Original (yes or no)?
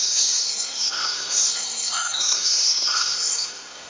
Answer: no